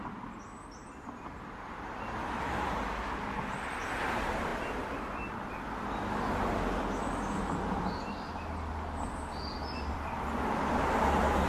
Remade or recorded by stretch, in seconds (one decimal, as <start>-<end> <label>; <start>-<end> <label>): 0.0-11.5 recorded